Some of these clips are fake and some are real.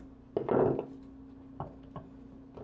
real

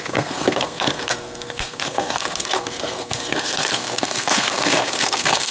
fake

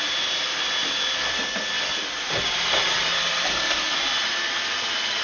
real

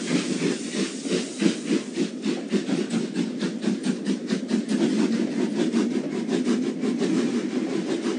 real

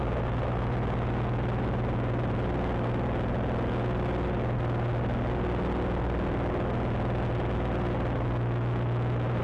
real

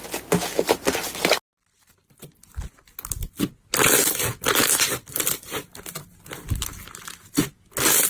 real